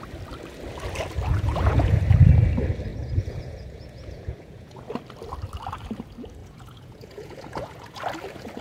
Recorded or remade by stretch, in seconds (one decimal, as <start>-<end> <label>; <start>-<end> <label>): 0.0-1.3 recorded; 1.3-2.0 remade; 2.0-2.9 recorded; 2.9-4.9 remade; 4.9-6.4 recorded; 6.4-8.0 remade; 8.0-8.6 recorded